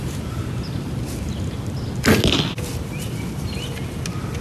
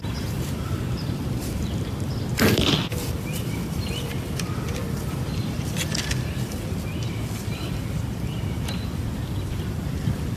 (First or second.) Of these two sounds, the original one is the first